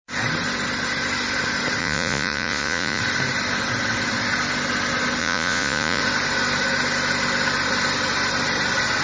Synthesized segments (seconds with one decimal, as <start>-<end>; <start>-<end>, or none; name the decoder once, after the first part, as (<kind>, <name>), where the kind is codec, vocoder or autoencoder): 1.8-3.0 (vocoder, Vocos); 5.2-6.0